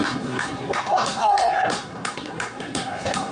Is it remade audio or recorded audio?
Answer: remade